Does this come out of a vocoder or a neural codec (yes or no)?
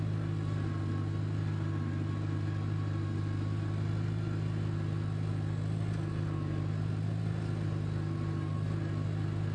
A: no